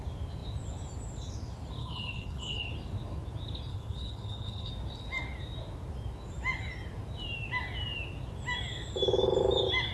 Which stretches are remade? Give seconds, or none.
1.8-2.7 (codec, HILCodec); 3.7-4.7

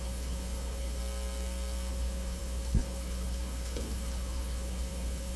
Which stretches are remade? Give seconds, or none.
0.0-1.0 (codec, HILCodec); 1.9-5.4

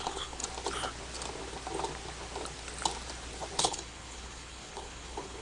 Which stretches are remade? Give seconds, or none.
0.0-0.4 (codec, HILCodec); 3.6-5.4

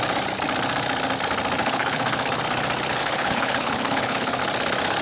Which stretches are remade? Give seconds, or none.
1.6-2.4 (codec, HILCodec); 3.0-4.4